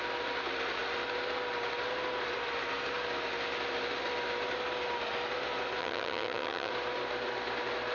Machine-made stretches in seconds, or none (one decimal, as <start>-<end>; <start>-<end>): 5.8-6.7